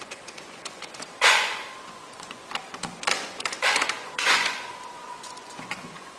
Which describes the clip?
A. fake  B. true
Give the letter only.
A